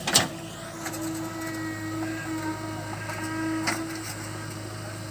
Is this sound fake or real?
real